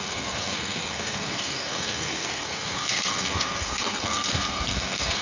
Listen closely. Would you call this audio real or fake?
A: fake